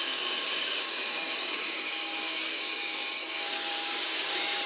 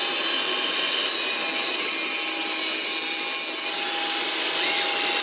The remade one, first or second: first